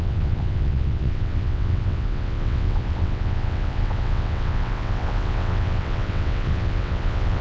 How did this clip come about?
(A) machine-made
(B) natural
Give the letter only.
A